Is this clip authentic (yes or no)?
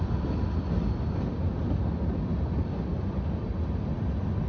yes